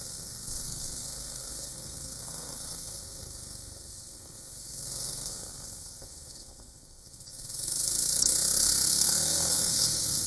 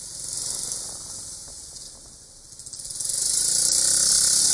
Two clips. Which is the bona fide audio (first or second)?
second